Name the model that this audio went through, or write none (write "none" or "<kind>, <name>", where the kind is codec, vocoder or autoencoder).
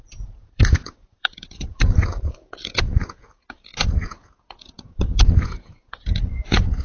vocoder, Vocos